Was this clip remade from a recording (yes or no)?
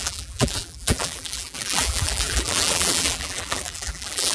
yes